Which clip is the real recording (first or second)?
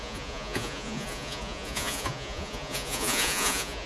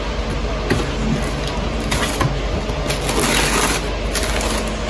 second